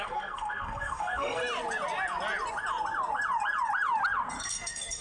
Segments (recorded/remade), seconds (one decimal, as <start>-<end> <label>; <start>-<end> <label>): 0.0-1.4 remade; 1.4-4.4 recorded; 4.4-5.0 remade